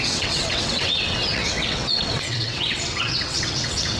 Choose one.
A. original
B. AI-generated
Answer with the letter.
B